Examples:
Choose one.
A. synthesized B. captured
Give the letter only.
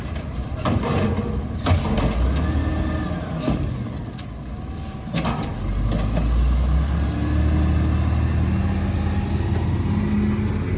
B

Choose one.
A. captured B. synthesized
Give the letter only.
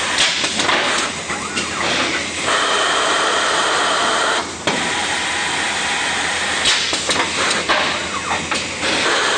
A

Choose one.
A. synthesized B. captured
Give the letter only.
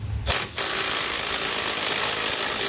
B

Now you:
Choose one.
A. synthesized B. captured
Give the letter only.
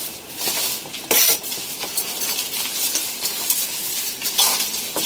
A